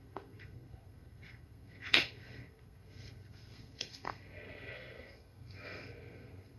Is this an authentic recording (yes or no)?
no